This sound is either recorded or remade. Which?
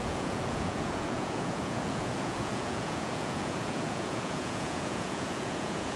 remade